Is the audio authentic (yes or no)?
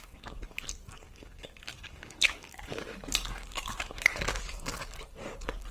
no